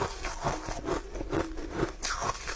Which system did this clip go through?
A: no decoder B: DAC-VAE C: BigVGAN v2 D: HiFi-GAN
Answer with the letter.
C